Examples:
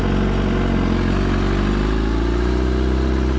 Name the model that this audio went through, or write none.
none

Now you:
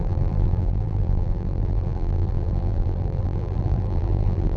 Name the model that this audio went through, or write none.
vocoder, BigVGAN v2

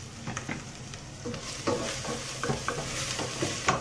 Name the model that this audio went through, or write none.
none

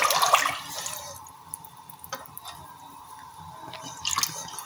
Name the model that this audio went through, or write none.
none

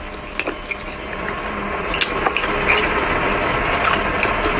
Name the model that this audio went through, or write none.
none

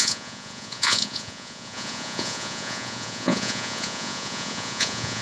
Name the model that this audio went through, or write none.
vocoder, Vocos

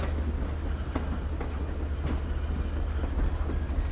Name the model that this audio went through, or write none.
none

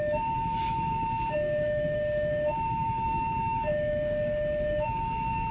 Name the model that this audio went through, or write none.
codec, DAC